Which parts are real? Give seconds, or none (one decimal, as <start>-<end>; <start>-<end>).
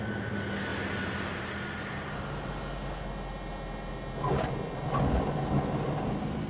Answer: 0.0-6.5